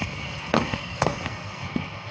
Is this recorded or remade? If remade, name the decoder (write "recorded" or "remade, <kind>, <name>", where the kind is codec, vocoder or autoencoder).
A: remade, codec, SNAC